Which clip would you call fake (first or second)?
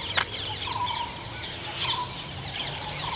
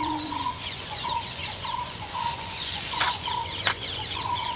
second